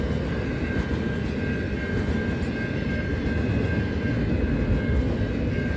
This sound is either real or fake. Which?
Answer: real